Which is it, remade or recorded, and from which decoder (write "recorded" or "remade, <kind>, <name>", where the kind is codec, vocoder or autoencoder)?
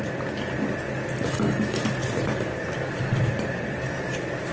recorded